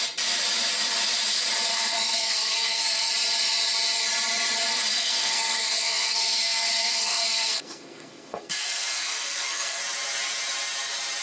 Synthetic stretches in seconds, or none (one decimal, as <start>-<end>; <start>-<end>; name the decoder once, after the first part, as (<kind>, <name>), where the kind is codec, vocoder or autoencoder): 1.7-3.1 (codec, SNAC); 4.9-9.8